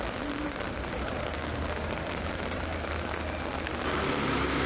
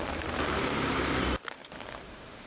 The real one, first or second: first